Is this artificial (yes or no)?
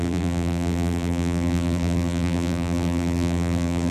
yes